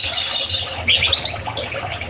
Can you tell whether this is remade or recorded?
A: recorded